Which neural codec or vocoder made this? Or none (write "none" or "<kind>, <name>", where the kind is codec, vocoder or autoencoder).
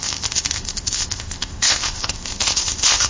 codec, ZipCodec